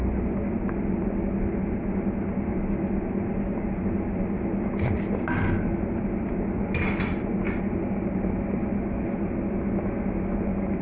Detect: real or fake real